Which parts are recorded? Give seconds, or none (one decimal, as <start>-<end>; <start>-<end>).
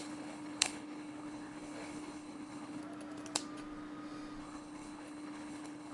2.8-4.4